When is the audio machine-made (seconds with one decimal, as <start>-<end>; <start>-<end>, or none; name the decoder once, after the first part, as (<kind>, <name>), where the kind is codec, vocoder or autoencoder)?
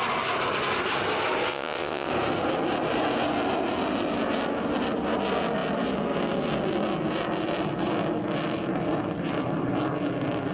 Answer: 1.5-2.1 (vocoder, WaveNeXt)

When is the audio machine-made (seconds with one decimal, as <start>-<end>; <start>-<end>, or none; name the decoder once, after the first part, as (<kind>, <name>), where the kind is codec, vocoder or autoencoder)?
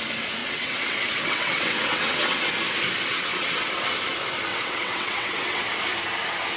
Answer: 0.4-2.5 (vocoder, WaveNeXt); 3.1-3.7; 4.5-5.7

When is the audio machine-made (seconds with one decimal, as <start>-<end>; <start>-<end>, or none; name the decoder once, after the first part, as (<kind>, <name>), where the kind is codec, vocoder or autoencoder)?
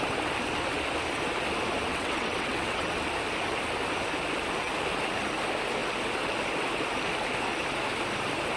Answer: 1.9-3.0 (vocoder, WaveNeXt)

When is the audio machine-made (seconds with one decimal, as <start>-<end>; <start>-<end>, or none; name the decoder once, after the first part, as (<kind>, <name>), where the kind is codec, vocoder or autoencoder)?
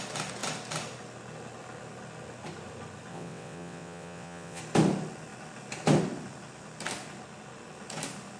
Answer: 3.1-4.6 (vocoder, WaveNeXt)